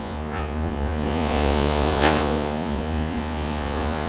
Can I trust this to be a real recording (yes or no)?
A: no